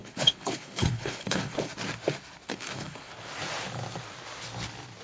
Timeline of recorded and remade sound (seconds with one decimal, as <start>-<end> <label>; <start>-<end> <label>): 0.0-1.7 remade; 1.7-2.5 recorded; 2.5-3.1 remade; 3.1-5.0 recorded